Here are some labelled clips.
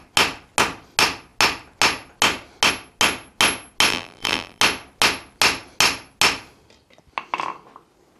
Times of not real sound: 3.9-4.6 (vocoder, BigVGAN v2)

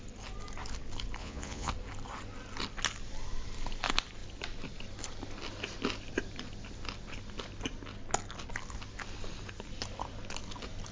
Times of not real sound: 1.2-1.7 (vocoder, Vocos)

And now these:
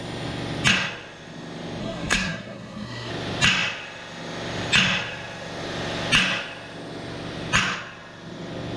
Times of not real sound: 1.8-3.1 (codec, SNAC)

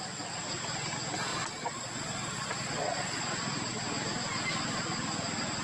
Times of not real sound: 1.3-3.2 (vocoder, Vocos)

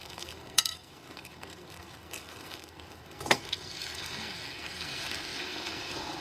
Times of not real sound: 0.0-6.2 (codec, SNAC)